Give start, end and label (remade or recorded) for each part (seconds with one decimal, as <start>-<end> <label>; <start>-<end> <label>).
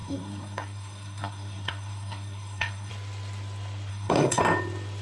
0.0-2.9 remade; 2.9-3.9 recorded; 3.9-4.4 remade; 4.4-5.0 recorded